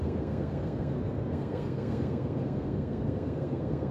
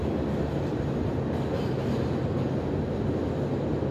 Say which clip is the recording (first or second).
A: second